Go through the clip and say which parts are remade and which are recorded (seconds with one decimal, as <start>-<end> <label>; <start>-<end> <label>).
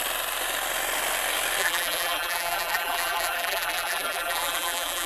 0.0-1.6 recorded; 1.6-5.1 remade